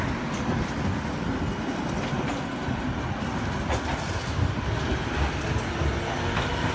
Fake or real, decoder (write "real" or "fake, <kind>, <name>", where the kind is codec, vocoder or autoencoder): real